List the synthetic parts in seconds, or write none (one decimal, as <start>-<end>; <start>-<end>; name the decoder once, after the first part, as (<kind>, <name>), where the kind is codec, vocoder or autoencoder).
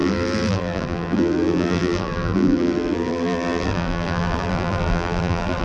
0.0-5.6 (vocoder, BigVGAN v2)